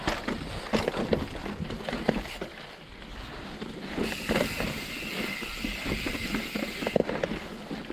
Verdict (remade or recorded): recorded